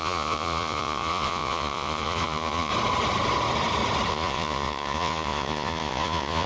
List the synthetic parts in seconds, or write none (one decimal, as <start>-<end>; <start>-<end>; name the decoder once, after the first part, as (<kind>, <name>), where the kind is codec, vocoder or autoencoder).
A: 0.0-2.7 (vocoder, Vocos); 4.1-6.5